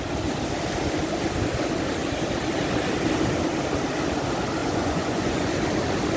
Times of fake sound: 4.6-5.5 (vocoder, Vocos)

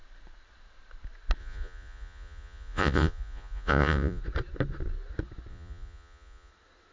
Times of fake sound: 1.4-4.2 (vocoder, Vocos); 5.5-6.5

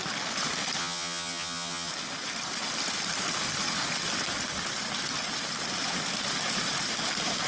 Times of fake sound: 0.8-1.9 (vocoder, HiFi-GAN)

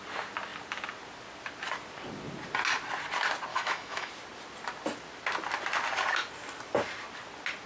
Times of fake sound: 3.5-4.1 (autoencoder, DAC-VAE)